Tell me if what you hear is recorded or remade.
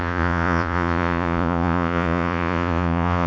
remade